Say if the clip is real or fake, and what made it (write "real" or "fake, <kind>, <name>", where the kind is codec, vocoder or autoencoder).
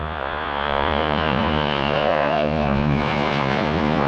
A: fake, vocoder, Vocos